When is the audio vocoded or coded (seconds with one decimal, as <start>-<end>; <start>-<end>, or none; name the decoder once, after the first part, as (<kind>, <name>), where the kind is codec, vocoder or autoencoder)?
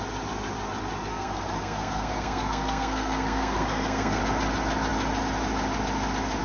1.1-4.2 (codec, SNAC)